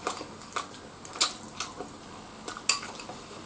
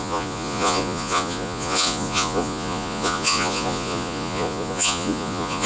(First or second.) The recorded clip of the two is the first